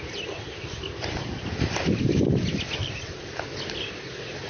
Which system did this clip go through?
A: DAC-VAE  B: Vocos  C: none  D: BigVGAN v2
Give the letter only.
C